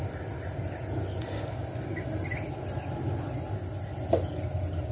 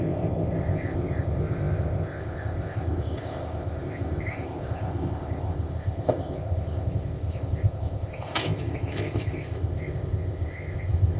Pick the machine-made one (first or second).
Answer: second